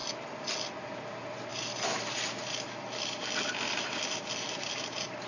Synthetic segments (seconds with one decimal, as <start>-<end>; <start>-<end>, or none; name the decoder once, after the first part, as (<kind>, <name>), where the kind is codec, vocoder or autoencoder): 1.5-4.7 (vocoder, BigVGAN v2)